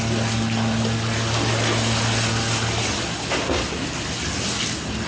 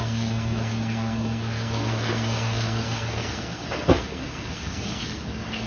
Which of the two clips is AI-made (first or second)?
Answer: second